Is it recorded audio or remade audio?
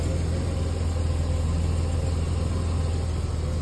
recorded